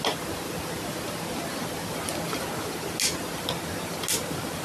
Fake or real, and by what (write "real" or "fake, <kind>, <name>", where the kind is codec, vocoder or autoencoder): real